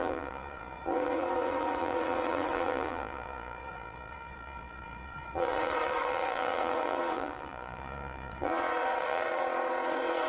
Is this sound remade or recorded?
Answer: remade